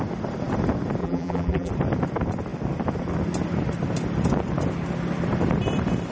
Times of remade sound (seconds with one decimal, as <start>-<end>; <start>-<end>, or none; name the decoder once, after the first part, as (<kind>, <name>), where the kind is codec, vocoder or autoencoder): 1.0-1.7 (vocoder, BigVGAN v2)